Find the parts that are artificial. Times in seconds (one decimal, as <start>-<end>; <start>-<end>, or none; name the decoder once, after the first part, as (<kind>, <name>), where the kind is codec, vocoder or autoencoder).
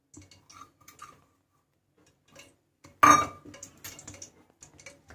none